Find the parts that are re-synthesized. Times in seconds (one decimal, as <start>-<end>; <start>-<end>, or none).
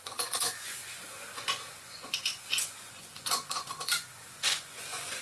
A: 0.0-5.2